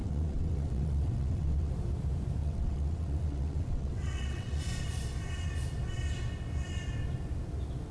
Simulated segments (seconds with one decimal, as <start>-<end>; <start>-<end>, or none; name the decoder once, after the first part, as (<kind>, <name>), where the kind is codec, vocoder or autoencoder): 0.0-1.7 (vocoder, WaveNeXt); 2.4-4.6